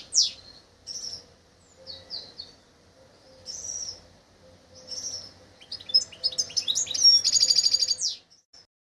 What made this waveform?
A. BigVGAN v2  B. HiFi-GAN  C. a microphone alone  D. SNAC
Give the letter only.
C